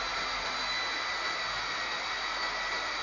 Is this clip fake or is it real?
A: real